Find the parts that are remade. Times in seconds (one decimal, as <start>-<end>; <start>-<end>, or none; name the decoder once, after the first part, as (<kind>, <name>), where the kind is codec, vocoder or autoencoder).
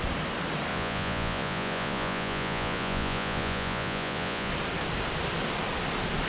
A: 0.7-4.5 (vocoder, Vocos)